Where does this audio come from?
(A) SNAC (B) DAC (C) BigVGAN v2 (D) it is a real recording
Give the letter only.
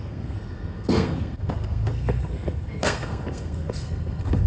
A